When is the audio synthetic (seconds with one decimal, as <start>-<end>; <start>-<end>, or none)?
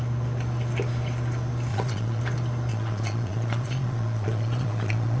1.7-2.2; 2.7-5.2